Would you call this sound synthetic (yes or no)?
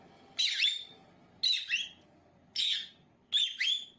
no